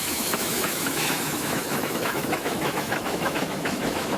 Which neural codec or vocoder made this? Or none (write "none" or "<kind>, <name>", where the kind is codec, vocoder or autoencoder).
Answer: autoencoder, DAC-VAE